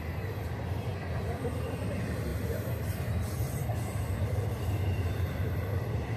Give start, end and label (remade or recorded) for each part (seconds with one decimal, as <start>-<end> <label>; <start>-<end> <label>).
0.0-2.3 recorded; 2.3-6.2 remade